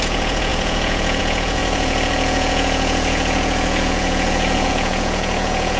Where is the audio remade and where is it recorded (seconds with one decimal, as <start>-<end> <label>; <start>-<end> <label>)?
0.0-5.8 remade